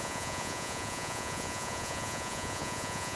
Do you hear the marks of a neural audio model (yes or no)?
yes